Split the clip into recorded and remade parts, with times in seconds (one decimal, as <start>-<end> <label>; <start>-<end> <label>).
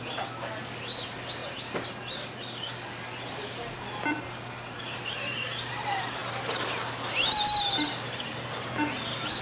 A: 0.0-9.4 recorded